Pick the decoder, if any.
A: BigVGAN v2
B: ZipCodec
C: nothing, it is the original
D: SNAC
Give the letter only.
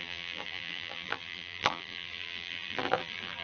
A